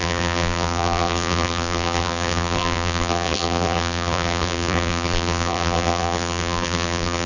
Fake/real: fake